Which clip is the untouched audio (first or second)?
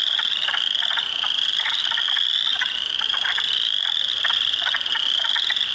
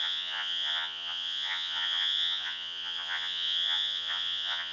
first